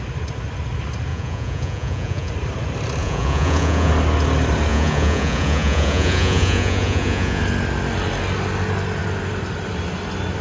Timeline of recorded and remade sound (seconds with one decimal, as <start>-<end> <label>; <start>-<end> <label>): 0.0-1.1 recorded; 1.1-2.3 remade; 2.3-3.0 recorded; 3.0-3.9 remade; 3.9-4.7 recorded; 4.7-7.4 remade; 7.4-10.4 recorded